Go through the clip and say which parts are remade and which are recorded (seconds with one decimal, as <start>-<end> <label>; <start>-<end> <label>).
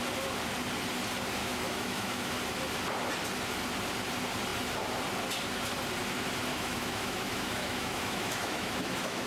0.0-1.4 recorded; 1.4-2.3 remade; 2.3-6.5 recorded; 6.5-9.3 remade